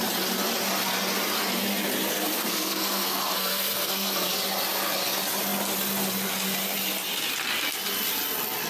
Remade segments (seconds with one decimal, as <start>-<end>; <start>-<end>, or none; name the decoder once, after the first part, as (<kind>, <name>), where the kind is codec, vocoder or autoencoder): 2.1-4.3 (codec, SNAC)